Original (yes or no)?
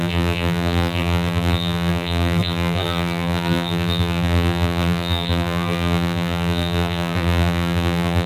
no